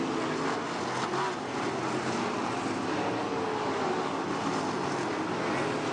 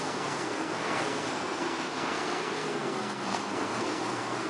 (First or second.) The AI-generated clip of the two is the second